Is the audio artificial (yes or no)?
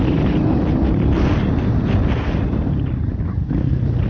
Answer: no